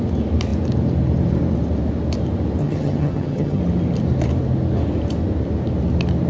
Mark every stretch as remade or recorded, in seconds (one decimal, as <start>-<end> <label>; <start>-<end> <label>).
0.0-2.6 recorded; 2.6-3.6 remade; 3.6-6.3 recorded